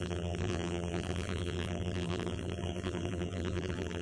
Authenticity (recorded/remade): remade